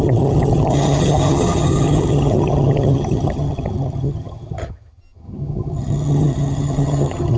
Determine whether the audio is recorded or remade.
remade